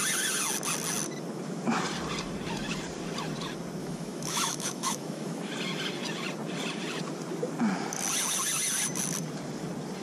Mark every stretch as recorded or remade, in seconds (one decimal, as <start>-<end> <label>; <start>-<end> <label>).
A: 0.0-3.8 recorded; 3.8-5.5 remade; 5.5-10.0 recorded